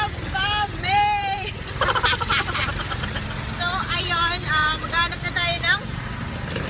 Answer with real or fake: fake